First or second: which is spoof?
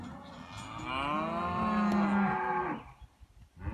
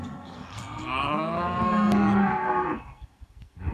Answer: second